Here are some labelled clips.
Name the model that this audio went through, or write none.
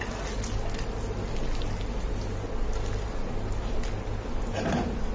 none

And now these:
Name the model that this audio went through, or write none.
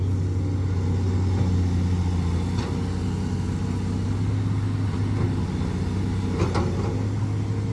none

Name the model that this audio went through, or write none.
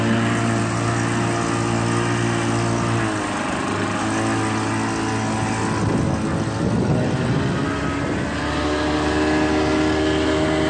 none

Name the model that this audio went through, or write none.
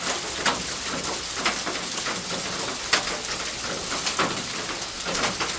none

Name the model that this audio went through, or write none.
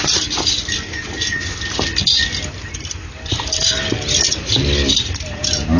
none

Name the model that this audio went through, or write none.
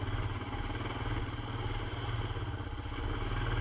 none